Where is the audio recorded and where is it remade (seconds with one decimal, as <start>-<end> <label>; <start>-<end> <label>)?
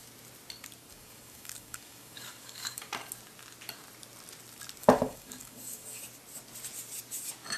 0.0-0.9 recorded; 0.9-2.9 remade; 2.9-4.8 recorded; 4.8-6.0 remade; 6.0-7.6 recorded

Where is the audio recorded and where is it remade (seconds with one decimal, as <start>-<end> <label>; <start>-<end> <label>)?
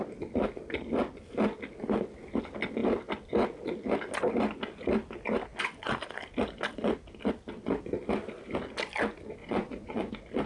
0.0-9.4 recorded; 9.4-10.1 remade; 10.1-10.5 recorded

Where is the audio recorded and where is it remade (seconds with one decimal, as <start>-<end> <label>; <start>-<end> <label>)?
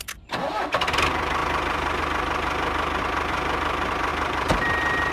0.0-1.4 recorded; 1.4-2.0 remade; 2.0-4.1 recorded; 4.1-5.1 remade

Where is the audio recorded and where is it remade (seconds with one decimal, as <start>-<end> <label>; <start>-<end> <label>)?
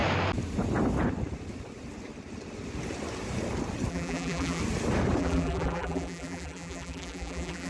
0.0-3.9 recorded; 3.9-4.6 remade; 4.6-5.2 recorded; 5.2-7.7 remade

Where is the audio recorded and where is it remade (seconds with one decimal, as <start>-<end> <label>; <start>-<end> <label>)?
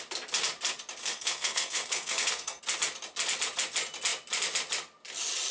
0.0-1.0 recorded; 1.0-2.6 remade; 2.6-5.5 recorded